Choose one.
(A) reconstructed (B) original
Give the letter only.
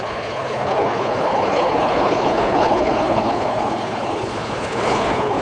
A